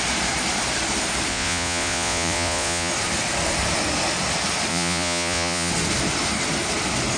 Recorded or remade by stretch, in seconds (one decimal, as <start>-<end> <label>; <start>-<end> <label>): 0.0-1.3 recorded; 1.3-2.9 remade; 2.9-4.7 recorded; 4.7-5.7 remade; 5.7-7.2 recorded